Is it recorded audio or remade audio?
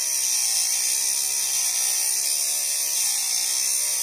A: recorded